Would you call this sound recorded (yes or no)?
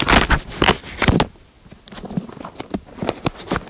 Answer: yes